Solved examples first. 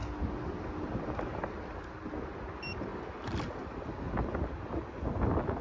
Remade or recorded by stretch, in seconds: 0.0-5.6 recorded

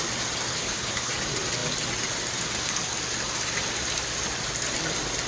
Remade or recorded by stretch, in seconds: 0.0-0.5 recorded; 0.5-1.1 remade; 1.1-5.3 recorded

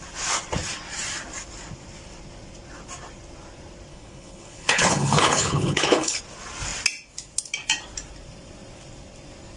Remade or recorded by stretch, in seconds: 0.0-3.9 recorded; 3.9-6.2 remade; 6.2-9.6 recorded

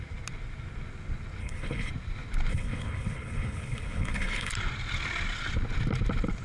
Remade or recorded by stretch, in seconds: 0.0-1.4 recorded; 1.4-1.9 remade; 1.9-2.5 recorded; 2.5-4.5 remade; 4.5-6.4 recorded